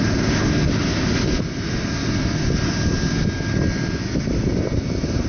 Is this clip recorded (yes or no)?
yes